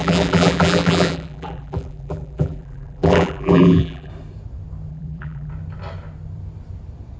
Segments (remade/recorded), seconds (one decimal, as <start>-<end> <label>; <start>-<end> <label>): 0.0-4.1 remade; 4.1-4.9 recorded; 4.9-5.5 remade; 5.5-7.2 recorded